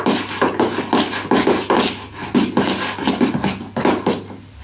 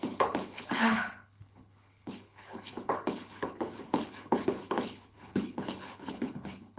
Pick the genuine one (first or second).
first